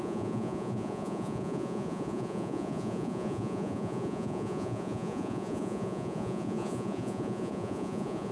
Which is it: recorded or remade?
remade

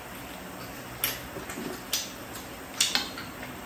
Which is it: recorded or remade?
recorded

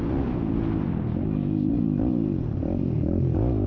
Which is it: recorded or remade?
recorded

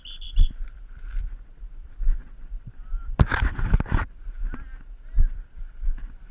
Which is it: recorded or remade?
remade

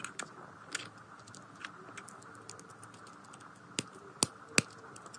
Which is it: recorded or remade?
recorded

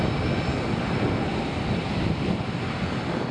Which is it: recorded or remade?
recorded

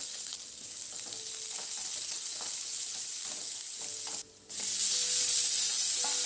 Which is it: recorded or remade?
recorded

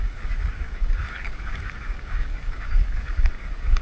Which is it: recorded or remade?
remade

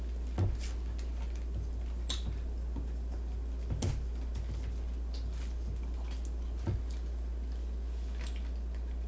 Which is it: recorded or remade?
recorded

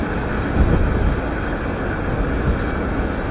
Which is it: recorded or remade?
recorded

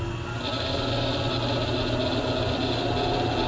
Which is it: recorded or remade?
recorded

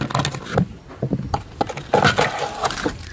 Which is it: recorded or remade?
recorded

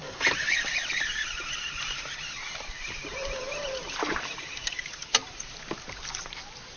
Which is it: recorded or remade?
remade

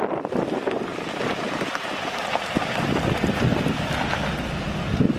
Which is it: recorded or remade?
recorded